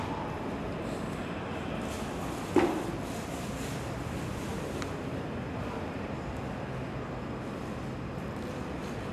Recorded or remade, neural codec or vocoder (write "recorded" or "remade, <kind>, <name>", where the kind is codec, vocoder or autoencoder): recorded